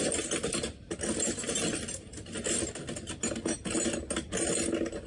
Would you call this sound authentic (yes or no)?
yes